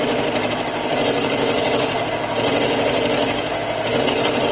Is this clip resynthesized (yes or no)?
yes